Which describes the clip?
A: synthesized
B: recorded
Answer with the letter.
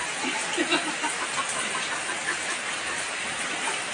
B